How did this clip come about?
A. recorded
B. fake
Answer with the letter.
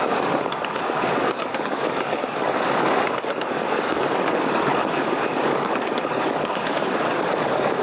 B